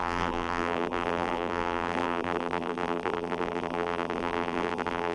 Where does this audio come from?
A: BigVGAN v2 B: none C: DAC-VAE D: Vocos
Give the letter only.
A